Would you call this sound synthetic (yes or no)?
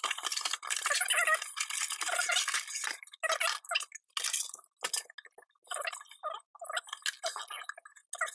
no